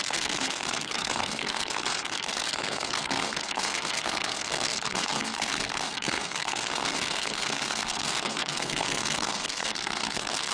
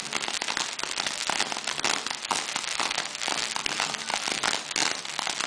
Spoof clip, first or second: first